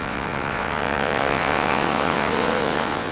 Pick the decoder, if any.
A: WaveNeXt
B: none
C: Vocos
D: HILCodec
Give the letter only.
A